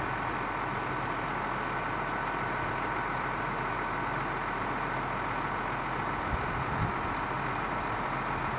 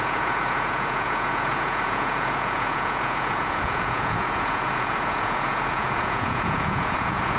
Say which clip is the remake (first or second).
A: second